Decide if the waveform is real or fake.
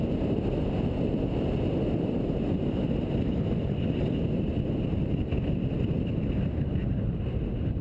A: real